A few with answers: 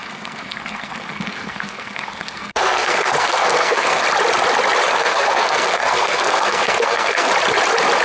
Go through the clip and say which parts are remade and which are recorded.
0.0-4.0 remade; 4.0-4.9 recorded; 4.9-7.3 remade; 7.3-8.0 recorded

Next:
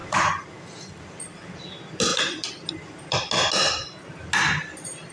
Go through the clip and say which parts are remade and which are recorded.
0.0-5.1 recorded

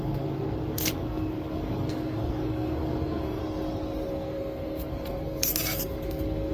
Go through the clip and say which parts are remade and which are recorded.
0.0-3.4 remade; 3.4-4.1 recorded; 4.1-6.5 remade

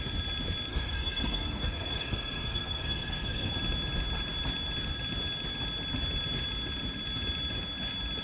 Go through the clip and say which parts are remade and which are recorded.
0.0-0.7 recorded; 0.7-3.5 remade; 3.5-8.2 recorded

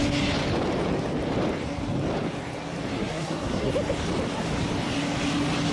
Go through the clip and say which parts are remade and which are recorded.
0.0-2.9 recorded; 2.9-3.7 remade; 3.7-5.7 recorded